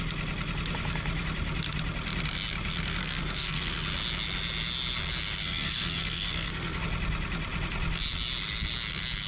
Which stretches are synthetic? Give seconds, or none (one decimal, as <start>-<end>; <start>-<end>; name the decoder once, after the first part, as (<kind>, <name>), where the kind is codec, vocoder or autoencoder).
3.0-3.7 (codec, SNAC); 5.4-6.8